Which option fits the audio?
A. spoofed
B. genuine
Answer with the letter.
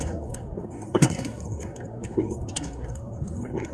A